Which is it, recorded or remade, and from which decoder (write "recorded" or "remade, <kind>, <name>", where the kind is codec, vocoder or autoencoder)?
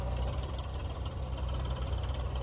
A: recorded